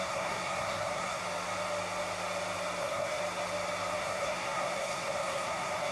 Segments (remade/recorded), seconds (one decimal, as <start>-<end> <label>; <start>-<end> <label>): 0.0-1.2 remade; 1.2-2.8 recorded; 2.8-3.2 remade; 3.2-4.0 recorded; 4.0-5.9 remade